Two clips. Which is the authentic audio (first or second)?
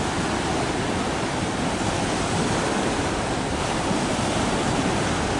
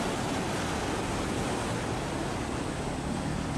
second